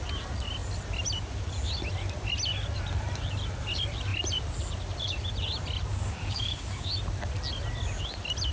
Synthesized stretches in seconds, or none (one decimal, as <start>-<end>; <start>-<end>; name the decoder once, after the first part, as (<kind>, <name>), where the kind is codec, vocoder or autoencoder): 5.9-6.9 (codec, DAC)